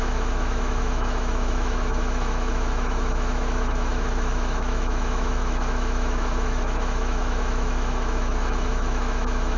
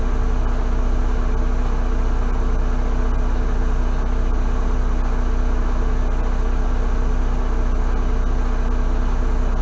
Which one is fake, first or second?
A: first